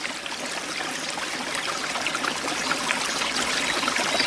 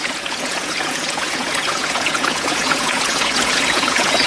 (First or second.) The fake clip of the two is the second